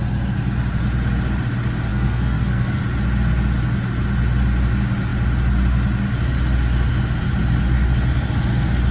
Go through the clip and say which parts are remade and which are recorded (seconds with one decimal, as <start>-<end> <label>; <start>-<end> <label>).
0.0-1.9 recorded; 1.9-2.8 remade; 2.8-8.9 recorded